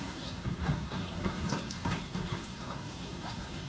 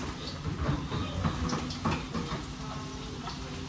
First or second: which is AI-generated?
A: first